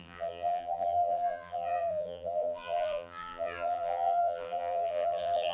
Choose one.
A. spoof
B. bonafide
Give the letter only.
A